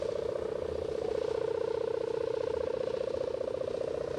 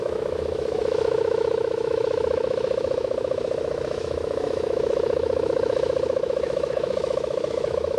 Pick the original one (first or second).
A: first